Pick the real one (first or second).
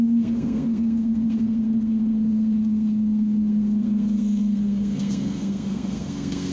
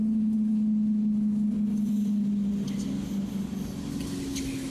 second